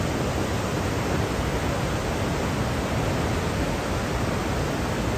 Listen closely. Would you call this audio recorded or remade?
recorded